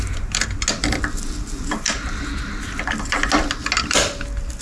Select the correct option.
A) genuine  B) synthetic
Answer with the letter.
A